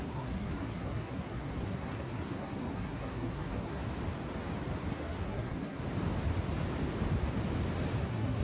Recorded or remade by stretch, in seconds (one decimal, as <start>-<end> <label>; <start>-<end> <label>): 0.0-3.8 remade; 3.8-4.9 recorded; 4.9-5.8 remade; 5.8-8.0 recorded; 8.0-8.4 remade

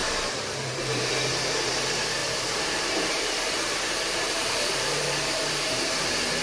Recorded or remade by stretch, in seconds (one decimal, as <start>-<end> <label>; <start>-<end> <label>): 0.0-1.1 remade; 1.1-2.2 recorded; 2.2-6.0 remade; 6.0-6.4 recorded

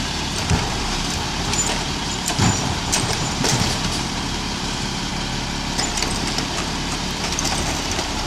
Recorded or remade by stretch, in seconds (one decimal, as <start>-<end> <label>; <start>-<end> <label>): 0.0-5.1 remade; 5.1-6.1 recorded; 6.1-8.3 remade

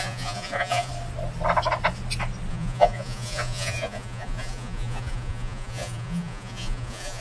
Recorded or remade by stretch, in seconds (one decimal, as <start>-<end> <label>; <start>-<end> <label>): 0.0-0.9 remade; 0.9-2.5 recorded; 2.5-7.2 remade

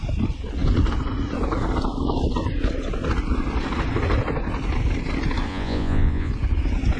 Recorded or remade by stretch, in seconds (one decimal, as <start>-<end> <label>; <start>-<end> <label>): 0.0-5.5 recorded; 5.5-6.3 remade; 6.3-7.0 recorded

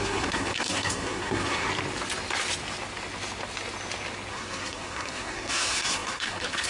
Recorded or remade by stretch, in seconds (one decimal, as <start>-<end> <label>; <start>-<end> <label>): 0.0-1.7 remade; 1.7-4.3 recorded; 4.3-6.7 remade